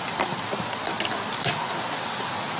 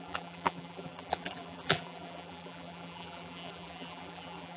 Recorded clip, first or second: first